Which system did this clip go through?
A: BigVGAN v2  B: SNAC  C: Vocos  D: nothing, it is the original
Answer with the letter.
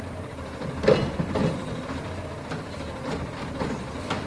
A